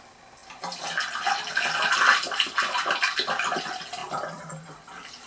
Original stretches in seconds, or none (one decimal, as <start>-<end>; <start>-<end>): 0.0-5.3